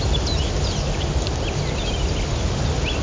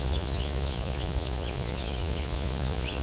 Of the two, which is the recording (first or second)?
first